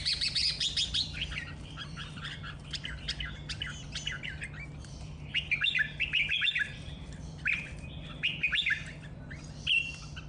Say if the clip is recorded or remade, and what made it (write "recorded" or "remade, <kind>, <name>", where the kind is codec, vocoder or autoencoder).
remade, vocoder, BigVGAN v2